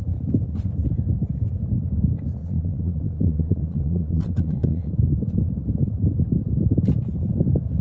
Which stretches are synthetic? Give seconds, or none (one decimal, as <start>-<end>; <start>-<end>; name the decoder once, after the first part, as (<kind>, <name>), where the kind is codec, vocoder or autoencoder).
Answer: 2.4-4.9 (vocoder, Vocos)